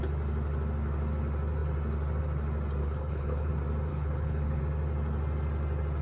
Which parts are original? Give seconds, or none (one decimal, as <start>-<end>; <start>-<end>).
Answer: 0.0-2.8; 3.5-3.9; 4.6-6.0